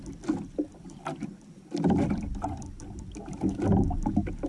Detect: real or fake real